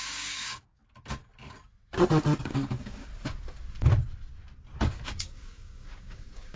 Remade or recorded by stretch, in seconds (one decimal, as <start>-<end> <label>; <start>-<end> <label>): 0.0-0.8 remade; 0.8-2.4 recorded; 2.4-3.1 remade; 3.1-4.9 recorded; 4.9-6.6 remade